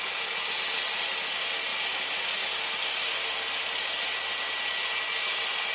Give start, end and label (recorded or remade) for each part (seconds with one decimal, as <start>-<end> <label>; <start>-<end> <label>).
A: 0.0-5.7 recorded